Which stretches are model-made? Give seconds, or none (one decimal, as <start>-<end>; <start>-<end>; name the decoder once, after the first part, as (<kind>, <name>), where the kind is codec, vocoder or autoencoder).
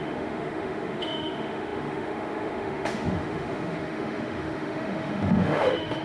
0.0-6.0 (autoencoder, DAC-VAE)